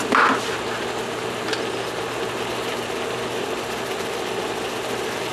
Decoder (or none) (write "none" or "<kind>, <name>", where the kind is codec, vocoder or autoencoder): none